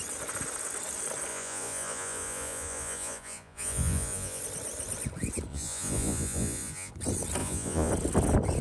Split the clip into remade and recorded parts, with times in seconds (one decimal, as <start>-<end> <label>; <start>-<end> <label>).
0.0-1.3 recorded; 1.3-4.4 remade; 4.4-5.5 recorded; 5.5-6.9 remade; 6.9-7.4 recorded; 7.4-7.9 remade; 7.9-8.6 recorded